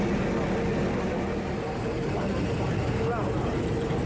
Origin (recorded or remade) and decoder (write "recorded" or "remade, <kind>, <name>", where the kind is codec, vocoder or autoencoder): recorded